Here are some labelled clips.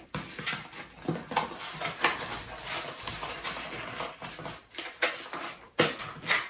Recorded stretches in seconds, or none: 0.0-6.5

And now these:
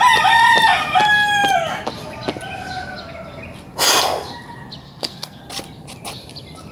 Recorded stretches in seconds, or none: 0.0-4.8; 5.4-6.7

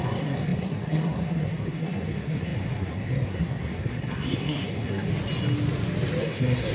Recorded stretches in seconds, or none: 5.1-6.2

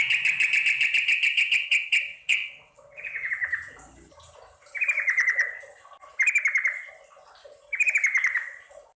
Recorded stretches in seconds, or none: 0.0-2.1; 3.3-9.0

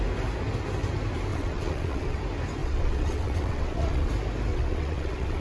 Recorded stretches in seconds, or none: 0.0-1.3; 2.2-2.6; 4.1-4.5

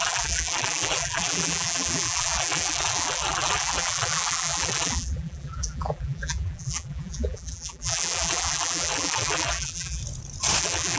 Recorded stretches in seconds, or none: 10.0-10.6

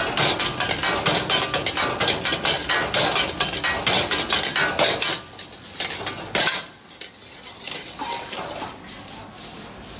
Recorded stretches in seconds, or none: 0.0-10.0